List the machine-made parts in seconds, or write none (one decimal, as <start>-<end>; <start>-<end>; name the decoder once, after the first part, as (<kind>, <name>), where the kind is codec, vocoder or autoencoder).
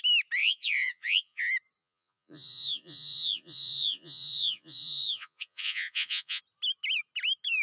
0.4-1.4 (vocoder, Vocos); 1.8-6.4